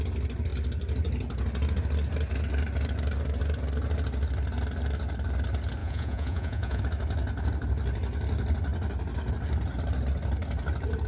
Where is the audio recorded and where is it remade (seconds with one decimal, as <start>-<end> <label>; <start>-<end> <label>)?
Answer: 0.0-5.8 recorded; 5.8-6.8 remade; 6.8-11.1 recorded